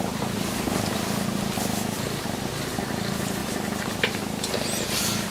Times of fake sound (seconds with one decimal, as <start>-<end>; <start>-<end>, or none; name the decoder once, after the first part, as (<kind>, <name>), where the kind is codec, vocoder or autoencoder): none